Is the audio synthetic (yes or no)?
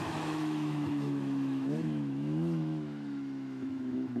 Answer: yes